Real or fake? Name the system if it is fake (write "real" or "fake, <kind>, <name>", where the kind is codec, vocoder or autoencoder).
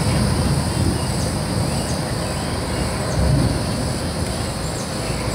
real